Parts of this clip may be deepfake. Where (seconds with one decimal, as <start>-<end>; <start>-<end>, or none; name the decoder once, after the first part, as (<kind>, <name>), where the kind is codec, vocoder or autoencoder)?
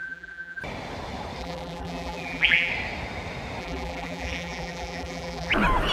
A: 0.0-0.6 (vocoder, BigVGAN v2); 1.4-2.7; 3.6-5.5